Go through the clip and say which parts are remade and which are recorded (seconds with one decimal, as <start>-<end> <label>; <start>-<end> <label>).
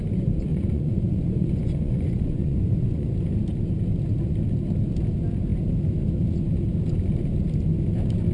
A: 0.0-0.5 recorded; 0.5-3.1 remade; 3.1-8.3 recorded